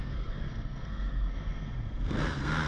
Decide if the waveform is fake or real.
fake